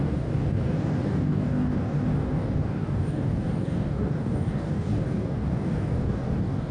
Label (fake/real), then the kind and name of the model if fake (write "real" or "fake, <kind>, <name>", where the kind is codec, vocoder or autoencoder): fake, codec, DAC